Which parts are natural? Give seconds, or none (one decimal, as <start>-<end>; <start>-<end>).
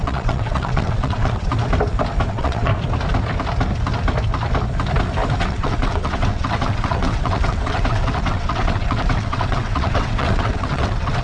1.5-2.3; 2.7-5.4